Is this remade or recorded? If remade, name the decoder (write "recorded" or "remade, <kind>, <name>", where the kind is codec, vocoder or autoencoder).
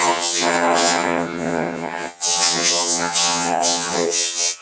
remade, vocoder, HiFi-GAN